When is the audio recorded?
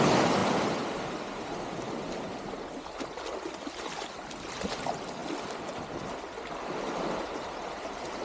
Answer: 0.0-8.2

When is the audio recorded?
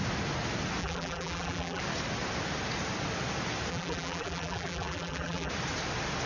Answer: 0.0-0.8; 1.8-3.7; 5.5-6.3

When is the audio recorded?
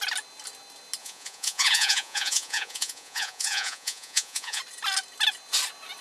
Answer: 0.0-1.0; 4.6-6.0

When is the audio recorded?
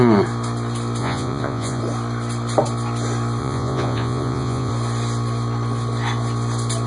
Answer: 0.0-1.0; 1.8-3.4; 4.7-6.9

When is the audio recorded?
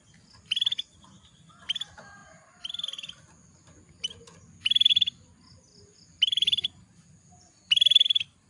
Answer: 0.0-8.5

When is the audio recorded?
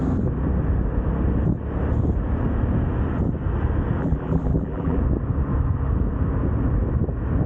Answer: 0.0-4.0; 5.0-7.5